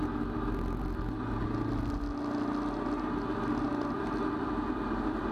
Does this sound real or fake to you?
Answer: real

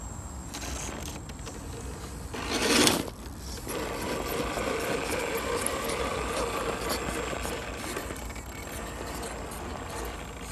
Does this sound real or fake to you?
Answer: real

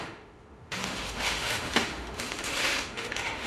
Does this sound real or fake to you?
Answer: fake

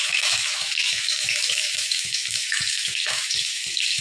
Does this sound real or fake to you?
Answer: fake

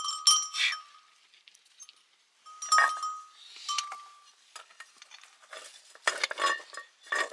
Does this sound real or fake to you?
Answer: real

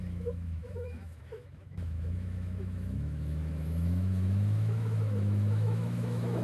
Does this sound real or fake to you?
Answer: fake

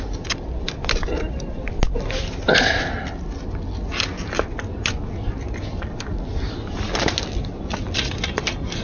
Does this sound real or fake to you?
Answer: real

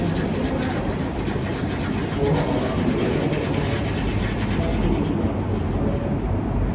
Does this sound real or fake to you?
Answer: real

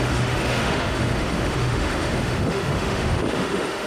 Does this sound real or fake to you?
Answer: fake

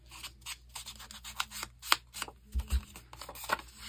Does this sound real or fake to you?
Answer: real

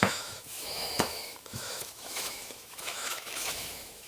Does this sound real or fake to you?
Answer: fake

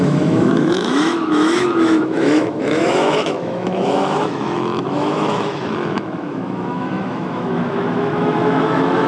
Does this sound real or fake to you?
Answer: fake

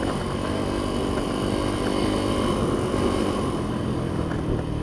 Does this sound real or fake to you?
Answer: real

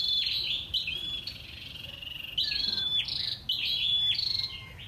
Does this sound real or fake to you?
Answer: real